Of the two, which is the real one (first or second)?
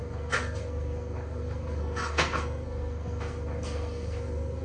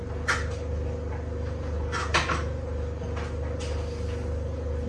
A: second